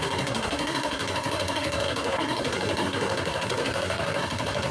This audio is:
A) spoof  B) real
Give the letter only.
A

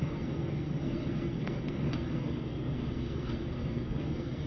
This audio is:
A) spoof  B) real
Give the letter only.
A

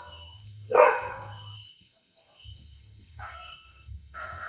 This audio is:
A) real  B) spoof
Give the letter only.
B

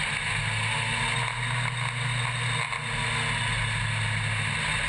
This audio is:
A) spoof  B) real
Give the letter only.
B